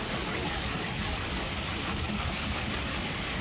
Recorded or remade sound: remade